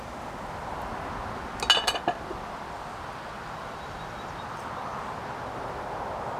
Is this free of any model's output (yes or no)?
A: yes